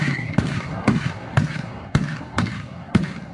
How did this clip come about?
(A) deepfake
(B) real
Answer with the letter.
A